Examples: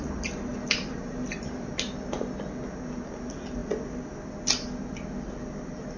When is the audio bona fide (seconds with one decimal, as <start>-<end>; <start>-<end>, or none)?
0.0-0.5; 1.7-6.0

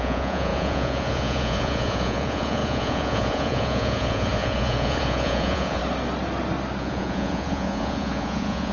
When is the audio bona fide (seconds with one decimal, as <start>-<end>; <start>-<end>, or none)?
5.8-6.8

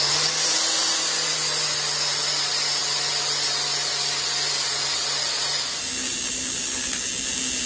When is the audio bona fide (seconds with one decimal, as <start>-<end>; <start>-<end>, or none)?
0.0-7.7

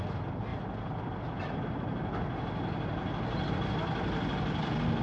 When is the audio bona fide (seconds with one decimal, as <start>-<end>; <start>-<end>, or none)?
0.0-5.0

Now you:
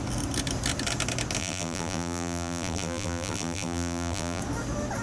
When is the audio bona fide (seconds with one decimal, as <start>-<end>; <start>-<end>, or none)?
0.0-1.4; 4.4-5.0

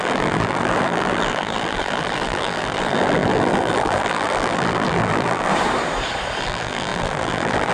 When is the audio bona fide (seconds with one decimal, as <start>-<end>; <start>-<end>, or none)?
5.5-6.4